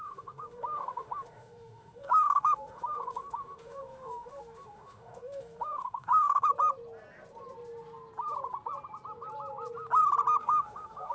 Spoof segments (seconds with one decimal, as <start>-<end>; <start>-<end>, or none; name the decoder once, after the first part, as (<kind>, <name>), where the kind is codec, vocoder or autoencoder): 0.0-6.5 (autoencoder, DAC-VAE); 10.4-11.1